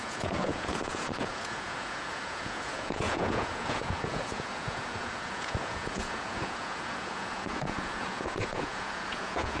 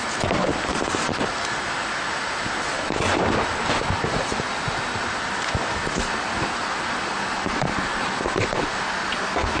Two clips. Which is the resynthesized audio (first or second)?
first